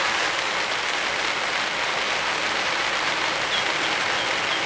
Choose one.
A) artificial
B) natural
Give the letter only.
B